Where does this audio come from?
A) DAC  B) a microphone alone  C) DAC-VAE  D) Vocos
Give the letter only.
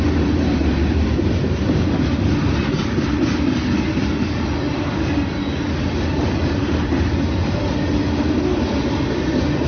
B